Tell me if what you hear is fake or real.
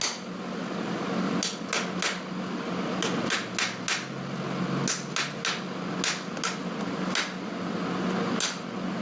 real